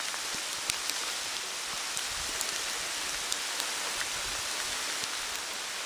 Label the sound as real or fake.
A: real